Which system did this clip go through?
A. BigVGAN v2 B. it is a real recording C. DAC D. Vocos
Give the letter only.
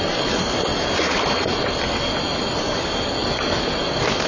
B